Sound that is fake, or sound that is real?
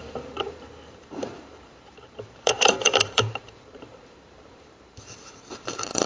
fake